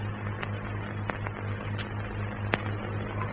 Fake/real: real